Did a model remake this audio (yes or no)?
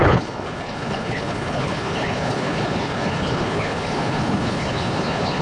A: yes